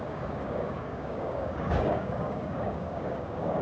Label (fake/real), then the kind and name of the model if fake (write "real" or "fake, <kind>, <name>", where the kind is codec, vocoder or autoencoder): fake, codec, DAC